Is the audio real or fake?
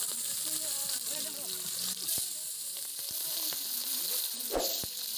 real